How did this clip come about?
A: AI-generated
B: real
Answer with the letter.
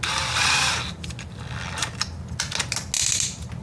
B